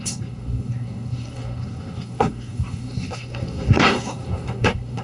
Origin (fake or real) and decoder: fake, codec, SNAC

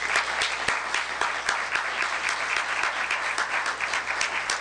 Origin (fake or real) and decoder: real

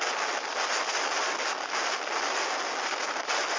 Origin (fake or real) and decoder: real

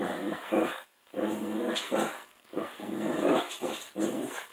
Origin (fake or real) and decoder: fake, codec, SNAC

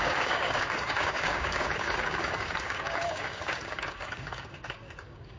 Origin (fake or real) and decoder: fake, codec, DAC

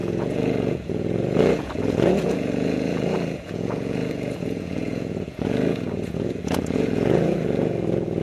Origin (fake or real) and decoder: fake, vocoder, Vocos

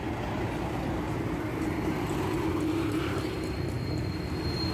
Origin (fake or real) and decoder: real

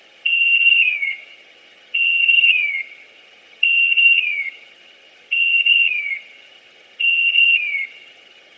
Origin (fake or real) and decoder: fake, vocoder, HiFi-GAN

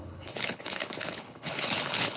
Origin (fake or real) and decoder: fake, codec, HILCodec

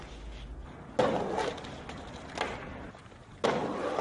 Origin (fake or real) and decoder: real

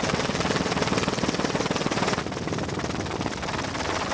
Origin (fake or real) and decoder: real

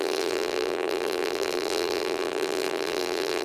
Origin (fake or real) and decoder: fake, vocoder, BigVGAN v2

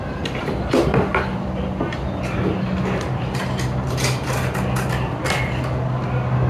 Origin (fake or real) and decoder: real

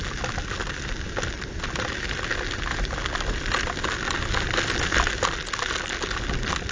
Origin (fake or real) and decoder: real